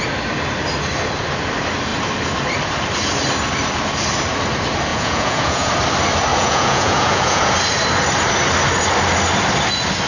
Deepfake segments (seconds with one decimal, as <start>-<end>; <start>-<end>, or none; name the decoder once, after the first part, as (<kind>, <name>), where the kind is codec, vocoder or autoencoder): 4.9-5.7 (vocoder, Vocos); 6.3-7.5